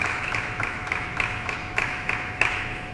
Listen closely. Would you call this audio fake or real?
fake